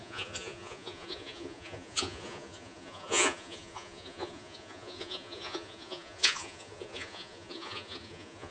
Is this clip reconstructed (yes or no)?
yes